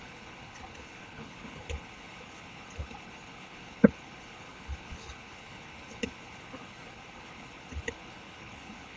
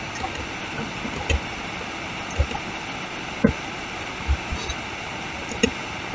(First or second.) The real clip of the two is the second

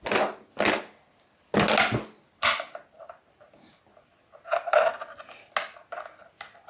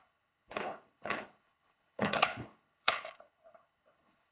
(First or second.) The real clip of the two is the first